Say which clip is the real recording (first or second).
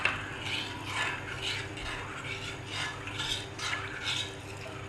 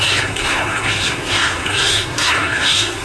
first